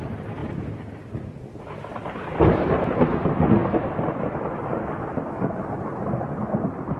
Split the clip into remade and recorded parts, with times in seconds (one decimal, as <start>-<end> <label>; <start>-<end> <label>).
0.0-0.4 recorded; 0.4-1.7 remade; 1.7-3.6 recorded; 3.6-5.8 remade; 5.8-7.0 recorded